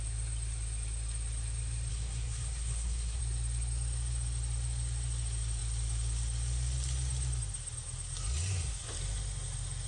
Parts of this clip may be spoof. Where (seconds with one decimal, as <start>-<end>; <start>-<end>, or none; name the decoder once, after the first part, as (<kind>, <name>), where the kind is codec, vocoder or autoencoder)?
1.9-3.2 (codec, SNAC)